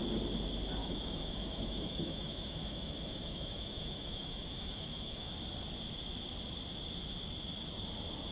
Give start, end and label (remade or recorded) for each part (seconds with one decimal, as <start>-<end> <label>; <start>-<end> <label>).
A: 0.0-0.8 recorded; 0.8-5.3 remade; 5.3-8.3 recorded